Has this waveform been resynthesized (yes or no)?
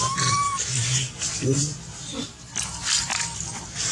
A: no